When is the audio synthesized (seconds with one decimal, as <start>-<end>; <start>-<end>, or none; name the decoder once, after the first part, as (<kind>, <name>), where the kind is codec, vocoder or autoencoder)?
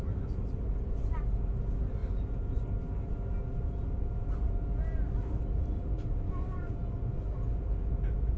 0.0-6.8 (vocoder, BigVGAN v2); 7.6-8.4